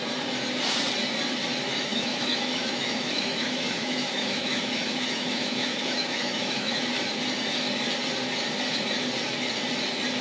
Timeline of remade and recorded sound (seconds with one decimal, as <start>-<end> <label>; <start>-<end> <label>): 0.0-1.9 recorded; 1.9-6.9 remade; 6.9-10.2 recorded